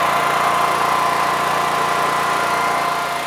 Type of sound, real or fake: real